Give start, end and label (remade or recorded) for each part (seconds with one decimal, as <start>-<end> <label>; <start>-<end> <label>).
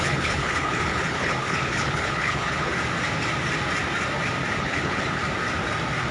0.0-2.7 remade; 2.7-4.6 recorded; 4.6-5.2 remade; 5.2-6.1 recorded